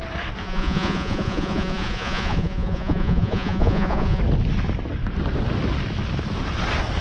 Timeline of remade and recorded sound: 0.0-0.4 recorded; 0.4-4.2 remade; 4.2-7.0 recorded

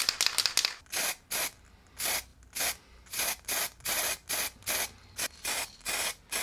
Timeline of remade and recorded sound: 0.0-6.4 recorded

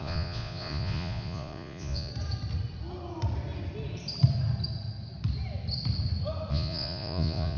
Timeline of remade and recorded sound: 0.0-2.1 remade; 2.1-6.5 recorded; 6.5-7.6 remade

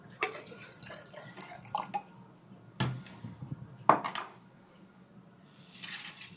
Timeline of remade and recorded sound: 0.0-1.3 remade; 1.3-5.1 recorded; 5.1-6.4 remade

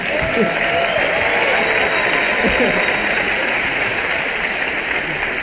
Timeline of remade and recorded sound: 0.0-3.0 recorded; 3.0-4.1 remade; 4.1-5.4 recorded

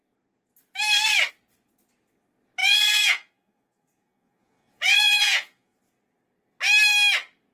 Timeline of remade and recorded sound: 0.0-2.6 recorded; 2.6-5.8 remade; 5.8-7.5 recorded

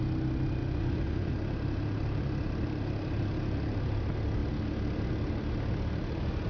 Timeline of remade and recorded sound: 0.0-0.6 recorded; 0.6-1.3 remade; 1.3-6.5 recorded